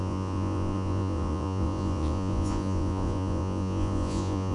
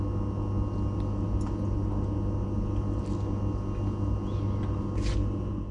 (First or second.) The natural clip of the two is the second